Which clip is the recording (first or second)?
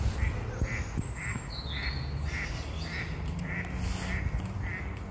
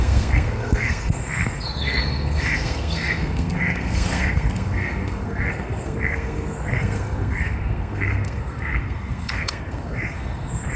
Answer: first